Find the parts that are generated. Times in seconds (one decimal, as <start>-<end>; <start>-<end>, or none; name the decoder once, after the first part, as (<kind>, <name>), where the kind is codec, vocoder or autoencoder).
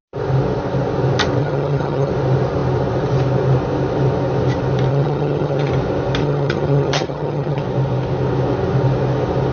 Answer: 1.4-2.1 (vocoder, HiFi-GAN); 4.9-5.7; 6.2-7.6